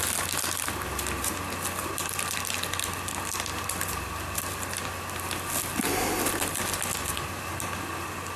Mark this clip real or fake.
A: real